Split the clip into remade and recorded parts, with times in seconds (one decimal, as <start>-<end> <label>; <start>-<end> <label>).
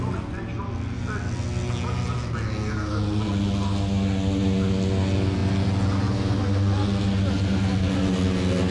0.0-8.7 recorded